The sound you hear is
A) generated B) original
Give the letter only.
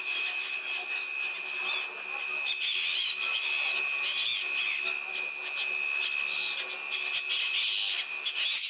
B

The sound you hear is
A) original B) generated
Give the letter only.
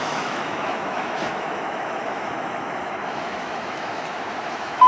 B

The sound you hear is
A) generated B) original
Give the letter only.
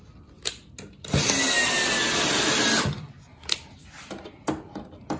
B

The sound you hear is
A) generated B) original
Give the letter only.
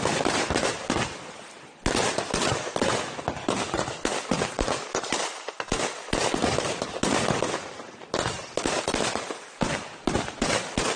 B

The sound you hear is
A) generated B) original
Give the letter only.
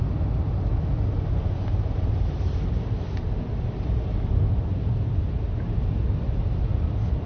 B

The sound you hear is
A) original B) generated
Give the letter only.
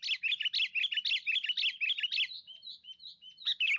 A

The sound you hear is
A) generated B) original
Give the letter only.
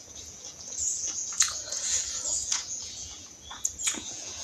A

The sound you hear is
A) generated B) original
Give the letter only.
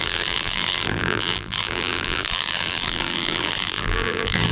A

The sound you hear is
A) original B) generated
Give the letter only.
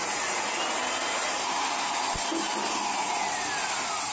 A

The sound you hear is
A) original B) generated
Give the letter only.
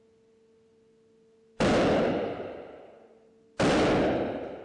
A